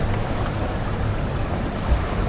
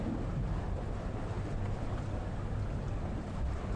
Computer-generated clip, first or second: first